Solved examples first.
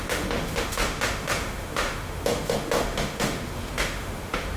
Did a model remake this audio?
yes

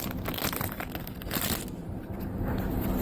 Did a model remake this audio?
no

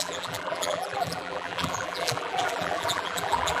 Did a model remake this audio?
yes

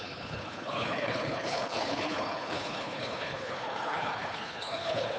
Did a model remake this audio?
yes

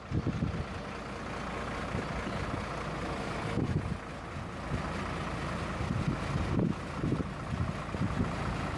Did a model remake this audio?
no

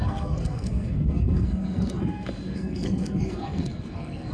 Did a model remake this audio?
yes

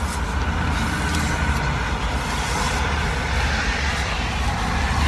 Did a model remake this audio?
no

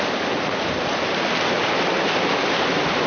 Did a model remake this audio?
no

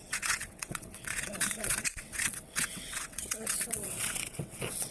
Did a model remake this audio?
yes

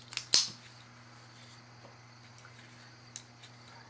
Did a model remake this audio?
no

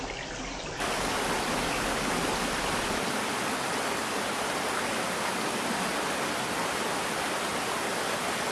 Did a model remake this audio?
no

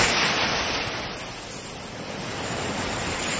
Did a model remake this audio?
no